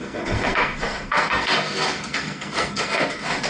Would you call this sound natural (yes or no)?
no